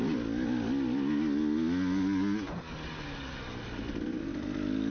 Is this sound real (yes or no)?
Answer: yes